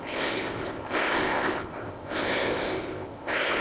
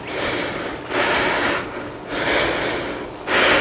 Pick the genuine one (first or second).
second